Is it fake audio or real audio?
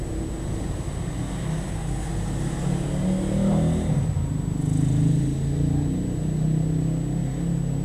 real